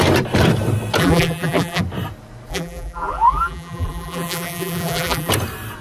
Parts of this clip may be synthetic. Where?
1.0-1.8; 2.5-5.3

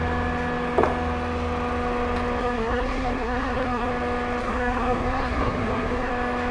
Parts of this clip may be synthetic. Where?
2.4-3.9; 4.4-6.1

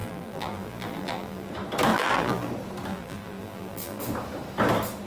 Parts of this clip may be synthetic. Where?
0.0-1.5; 1.9-2.5; 2.9-4.0

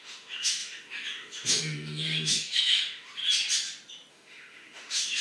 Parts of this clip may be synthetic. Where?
0.0-3.2; 4.1-5.2

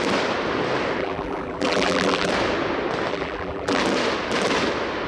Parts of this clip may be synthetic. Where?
1.0-2.3; 3.1-3.8

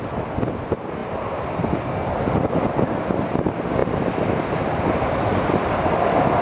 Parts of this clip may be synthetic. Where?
1.0-1.6

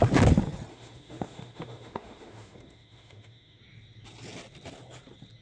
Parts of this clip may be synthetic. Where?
0.7-3.6

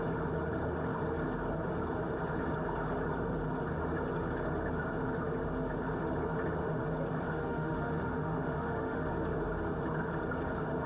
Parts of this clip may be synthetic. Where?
7.3-9.1